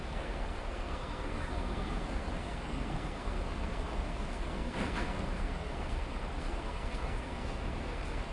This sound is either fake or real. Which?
fake